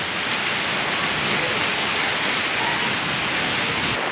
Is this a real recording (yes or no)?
yes